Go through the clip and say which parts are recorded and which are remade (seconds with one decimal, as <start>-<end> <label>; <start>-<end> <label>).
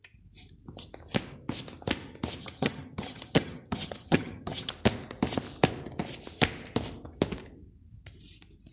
0.0-2.4 recorded; 2.4-4.7 remade; 4.7-8.7 recorded